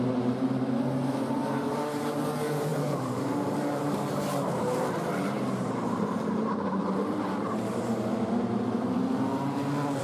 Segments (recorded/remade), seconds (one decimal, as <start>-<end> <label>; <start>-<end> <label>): 0.0-1.4 recorded; 1.4-2.2 remade; 2.2-2.7 recorded; 2.7-7.8 remade; 7.8-10.0 recorded